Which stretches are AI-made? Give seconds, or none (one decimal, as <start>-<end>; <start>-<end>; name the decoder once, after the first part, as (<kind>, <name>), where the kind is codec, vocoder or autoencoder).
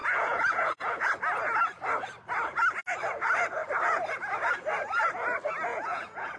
0.0-1.1 (vocoder, Vocos); 5.7-6.4